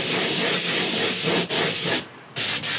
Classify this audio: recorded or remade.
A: recorded